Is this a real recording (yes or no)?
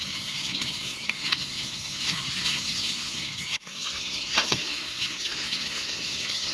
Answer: no